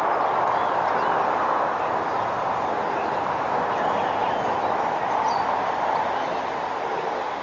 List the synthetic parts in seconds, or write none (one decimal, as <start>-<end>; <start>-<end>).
none